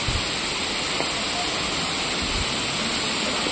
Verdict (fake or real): real